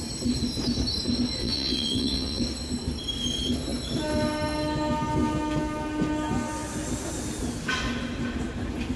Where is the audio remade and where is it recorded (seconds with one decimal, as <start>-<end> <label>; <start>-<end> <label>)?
0.0-1.4 recorded; 1.4-2.4 remade; 2.4-9.0 recorded